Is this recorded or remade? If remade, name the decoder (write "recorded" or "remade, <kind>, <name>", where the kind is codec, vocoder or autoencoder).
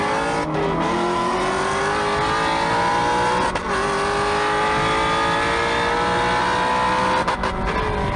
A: recorded